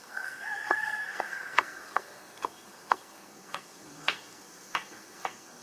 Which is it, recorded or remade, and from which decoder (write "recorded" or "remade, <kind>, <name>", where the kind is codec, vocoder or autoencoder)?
remade, codec, SNAC